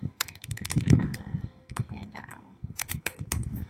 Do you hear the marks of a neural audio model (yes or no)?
yes